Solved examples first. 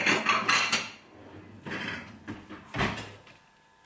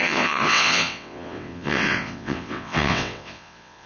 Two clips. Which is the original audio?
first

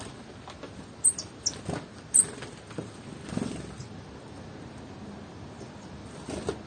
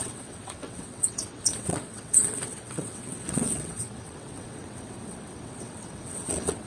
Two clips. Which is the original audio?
first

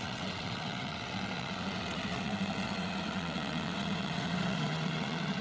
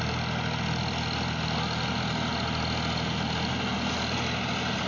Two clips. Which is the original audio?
second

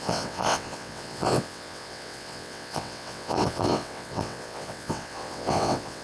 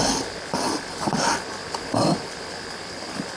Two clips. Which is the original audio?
second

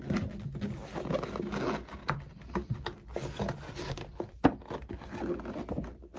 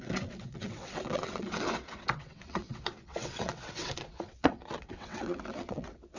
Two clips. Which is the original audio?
first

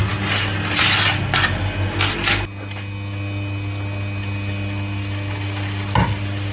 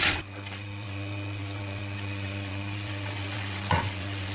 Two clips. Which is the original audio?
first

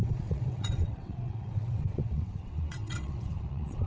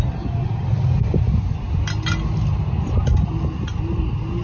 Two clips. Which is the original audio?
second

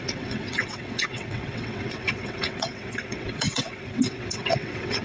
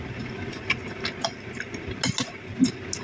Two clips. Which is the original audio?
second